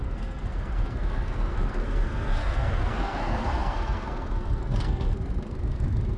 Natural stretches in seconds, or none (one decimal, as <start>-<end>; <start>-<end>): none